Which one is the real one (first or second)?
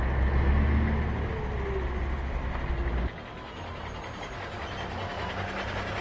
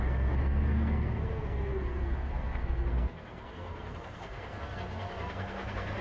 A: first